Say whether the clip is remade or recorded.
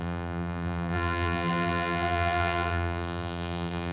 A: remade